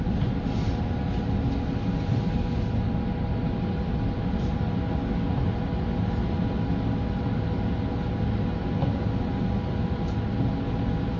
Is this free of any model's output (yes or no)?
yes